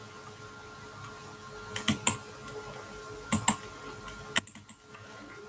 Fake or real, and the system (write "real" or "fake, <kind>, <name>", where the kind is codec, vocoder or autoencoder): real